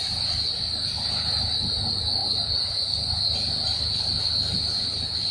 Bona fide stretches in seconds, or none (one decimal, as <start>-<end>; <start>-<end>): 0.0-5.3